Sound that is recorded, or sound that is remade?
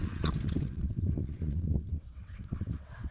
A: remade